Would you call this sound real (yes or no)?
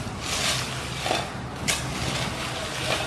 yes